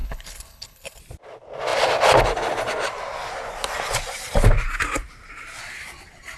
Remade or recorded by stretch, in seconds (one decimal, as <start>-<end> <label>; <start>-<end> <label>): 0.0-1.0 remade; 1.0-6.4 recorded